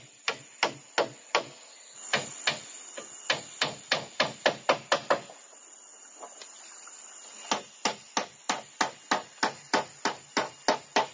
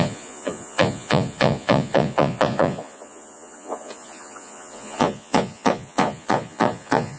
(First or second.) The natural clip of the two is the first